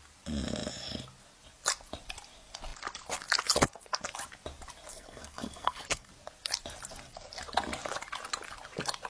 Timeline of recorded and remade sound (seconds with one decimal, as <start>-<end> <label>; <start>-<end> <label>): 0.0-4.9 recorded; 4.9-6.1 remade; 6.1-9.1 recorded